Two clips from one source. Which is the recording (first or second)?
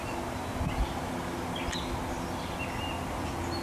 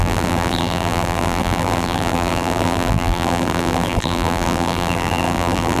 first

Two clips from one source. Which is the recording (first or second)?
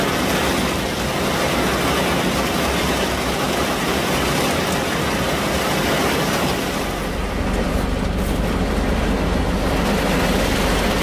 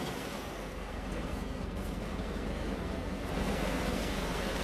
first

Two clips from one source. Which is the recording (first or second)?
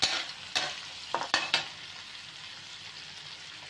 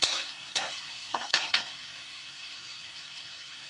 first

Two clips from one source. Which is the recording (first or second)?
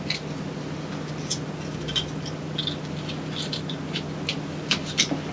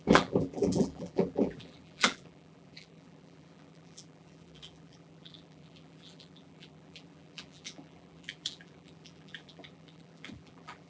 first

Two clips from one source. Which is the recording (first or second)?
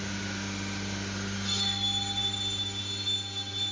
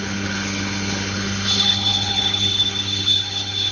first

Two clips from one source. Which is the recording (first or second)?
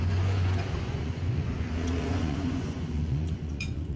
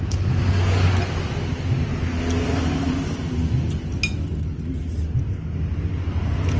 second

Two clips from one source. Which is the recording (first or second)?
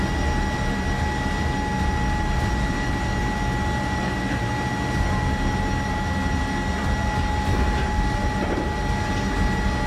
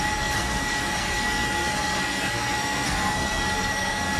first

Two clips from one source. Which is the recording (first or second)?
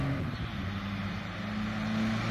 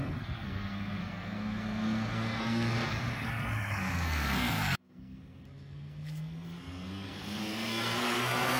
first